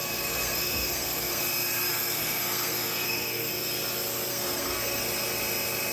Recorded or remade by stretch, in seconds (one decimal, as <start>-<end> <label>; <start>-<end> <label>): 0.0-1.4 remade; 1.4-1.9 recorded; 1.9-3.5 remade; 3.5-4.3 recorded; 4.3-5.0 remade; 5.0-5.9 recorded